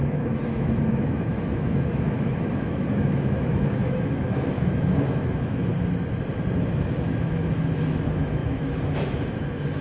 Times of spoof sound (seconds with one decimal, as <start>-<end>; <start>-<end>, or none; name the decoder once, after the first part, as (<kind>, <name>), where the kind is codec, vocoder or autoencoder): 0.0-5.7 (autoencoder, DAC-VAE); 6.5-9.8